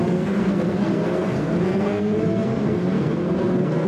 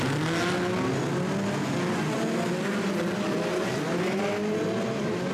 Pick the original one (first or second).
second